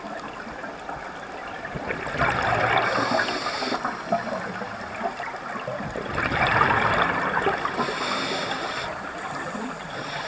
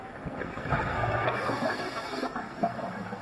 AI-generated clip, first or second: second